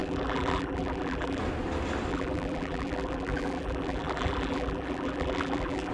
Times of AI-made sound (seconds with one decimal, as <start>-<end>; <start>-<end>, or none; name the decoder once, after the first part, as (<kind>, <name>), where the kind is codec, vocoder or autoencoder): 0.0-1.4 (vocoder, BigVGAN v2); 2.1-5.9